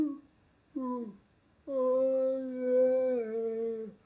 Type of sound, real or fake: fake